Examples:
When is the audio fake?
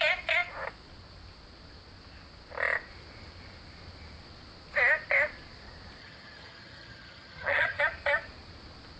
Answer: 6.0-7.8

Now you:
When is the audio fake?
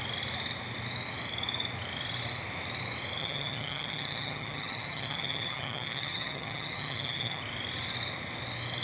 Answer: 3.2-7.4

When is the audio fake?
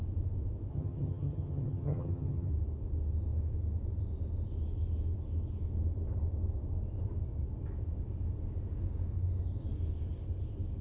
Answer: 0.7-2.5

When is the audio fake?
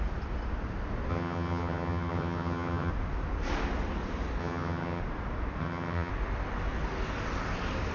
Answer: 1.1-2.9; 4.4-5.0; 5.6-6.1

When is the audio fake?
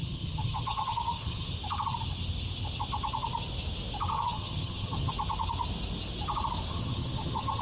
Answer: 0.0-1.5; 4.1-5.1; 6.7-7.6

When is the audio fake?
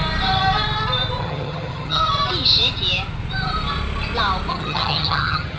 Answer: 1.2-2.0; 4.5-5.6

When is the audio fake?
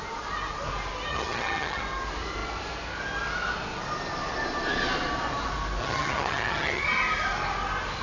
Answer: 1.1-1.8; 5.8-6.8